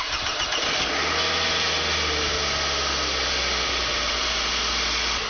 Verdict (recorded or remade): recorded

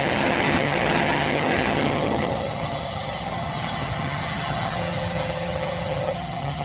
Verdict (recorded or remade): remade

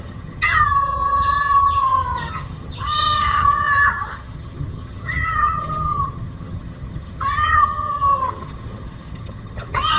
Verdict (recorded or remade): remade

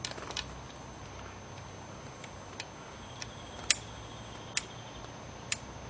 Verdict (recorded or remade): recorded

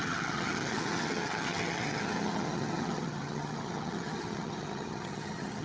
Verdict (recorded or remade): remade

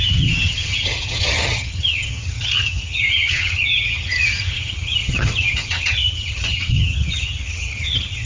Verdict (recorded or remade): remade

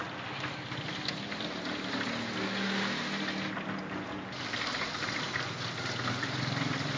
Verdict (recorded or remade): recorded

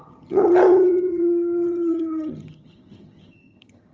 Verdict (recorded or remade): remade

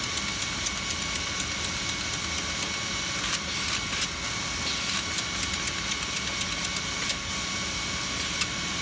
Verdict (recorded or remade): recorded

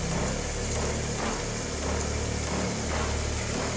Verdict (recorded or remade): recorded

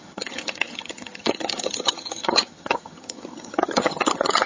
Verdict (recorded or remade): remade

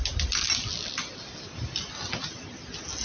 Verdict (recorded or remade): recorded